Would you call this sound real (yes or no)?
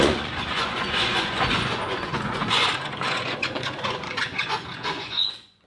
no